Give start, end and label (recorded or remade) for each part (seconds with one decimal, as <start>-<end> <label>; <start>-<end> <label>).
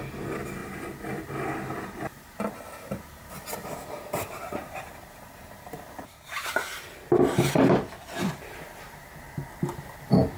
0.0-3.6 recorded; 3.6-6.9 remade; 6.9-10.4 recorded